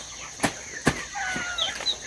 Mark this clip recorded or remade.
remade